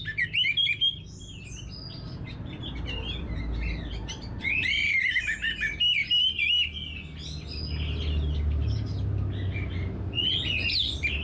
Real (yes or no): yes